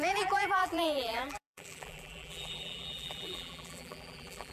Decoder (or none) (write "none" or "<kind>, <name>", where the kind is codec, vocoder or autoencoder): vocoder, BigVGAN v2